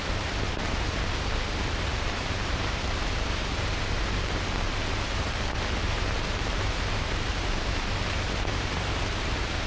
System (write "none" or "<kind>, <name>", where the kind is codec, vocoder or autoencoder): vocoder, BigVGAN v2